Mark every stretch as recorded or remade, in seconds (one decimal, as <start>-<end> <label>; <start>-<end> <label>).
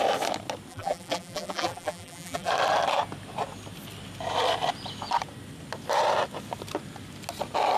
0.0-0.7 recorded; 0.7-2.5 remade; 2.5-7.8 recorded